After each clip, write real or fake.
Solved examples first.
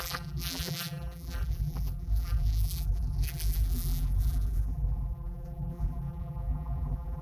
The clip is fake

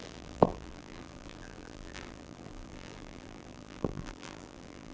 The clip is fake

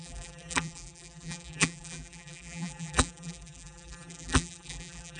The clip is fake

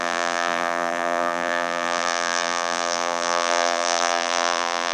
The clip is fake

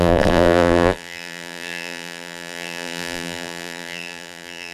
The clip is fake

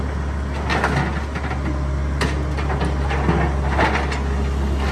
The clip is real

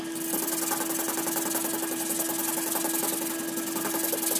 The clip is real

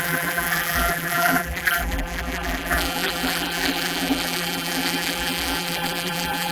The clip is fake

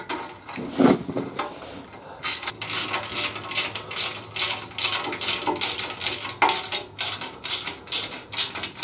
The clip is real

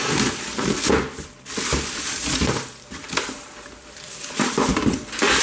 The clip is fake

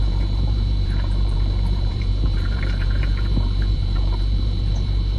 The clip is fake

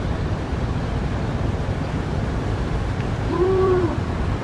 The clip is fake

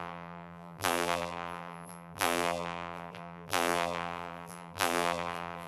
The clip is fake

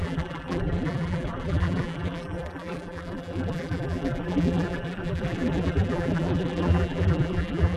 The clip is fake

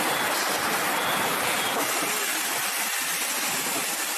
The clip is real